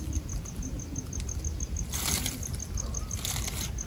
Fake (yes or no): no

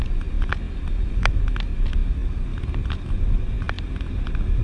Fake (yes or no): no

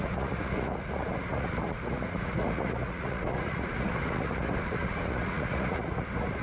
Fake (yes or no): yes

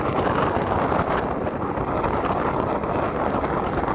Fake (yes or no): no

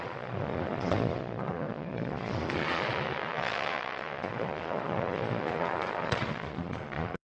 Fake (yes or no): yes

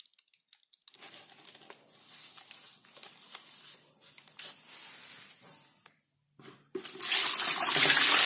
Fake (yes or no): no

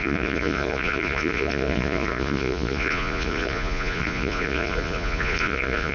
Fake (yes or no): yes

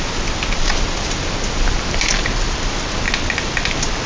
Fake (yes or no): no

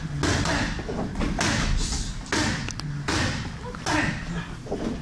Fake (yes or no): no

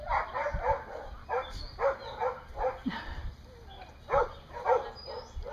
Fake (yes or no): no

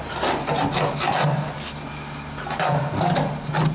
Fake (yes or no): no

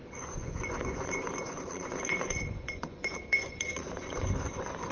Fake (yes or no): yes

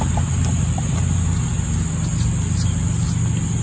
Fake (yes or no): no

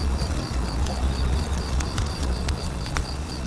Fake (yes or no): yes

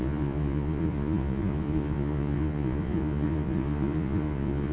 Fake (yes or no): yes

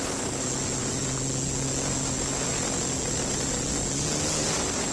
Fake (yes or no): no